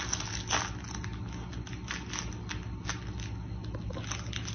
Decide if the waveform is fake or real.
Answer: real